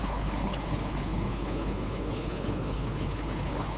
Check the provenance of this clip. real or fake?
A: fake